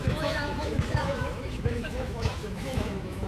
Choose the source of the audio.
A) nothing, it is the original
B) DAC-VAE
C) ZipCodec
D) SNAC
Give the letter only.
B